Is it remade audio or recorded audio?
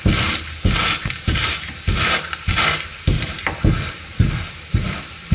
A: remade